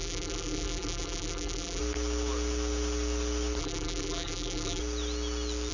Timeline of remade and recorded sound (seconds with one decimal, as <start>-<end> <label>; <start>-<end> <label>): 0.0-1.8 remade; 1.8-3.6 recorded; 3.6-4.8 remade; 4.8-5.7 recorded